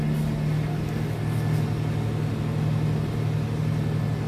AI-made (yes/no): no